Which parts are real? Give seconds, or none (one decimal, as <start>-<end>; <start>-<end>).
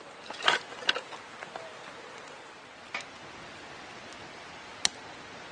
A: 0.0-5.5